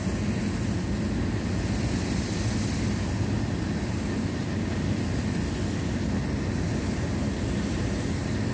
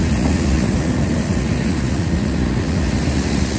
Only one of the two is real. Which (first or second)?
first